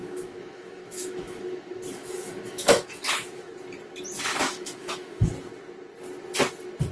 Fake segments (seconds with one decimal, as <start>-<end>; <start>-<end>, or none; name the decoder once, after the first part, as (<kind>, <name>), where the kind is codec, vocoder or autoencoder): 0.0-3.5 (autoencoder, DAC-VAE); 4.3-5.3